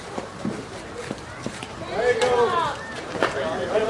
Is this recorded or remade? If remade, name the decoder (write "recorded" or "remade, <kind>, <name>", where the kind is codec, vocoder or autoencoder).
remade, vocoder, BigVGAN v2